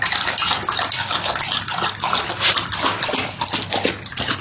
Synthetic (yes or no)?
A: no